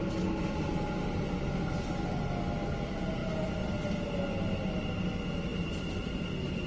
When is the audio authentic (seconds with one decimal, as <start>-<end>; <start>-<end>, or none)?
0.0-6.7